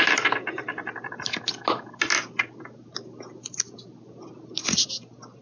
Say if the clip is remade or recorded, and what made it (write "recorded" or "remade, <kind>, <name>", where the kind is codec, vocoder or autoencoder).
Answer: recorded